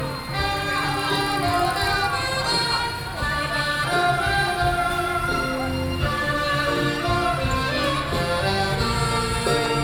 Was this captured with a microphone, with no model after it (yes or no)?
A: yes